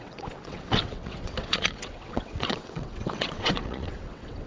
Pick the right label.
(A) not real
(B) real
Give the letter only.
A